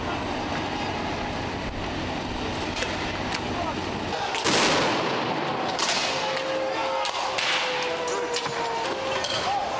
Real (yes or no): yes